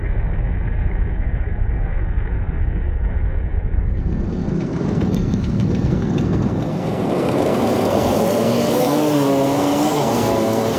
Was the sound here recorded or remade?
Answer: remade